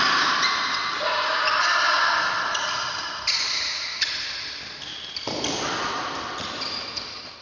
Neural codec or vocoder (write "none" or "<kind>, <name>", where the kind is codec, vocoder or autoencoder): none